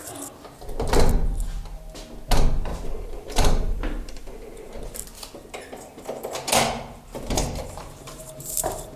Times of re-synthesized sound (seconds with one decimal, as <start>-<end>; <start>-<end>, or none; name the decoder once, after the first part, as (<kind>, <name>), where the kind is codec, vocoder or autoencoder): 2.7-4.7 (vocoder, BigVGAN v2); 7.6-9.0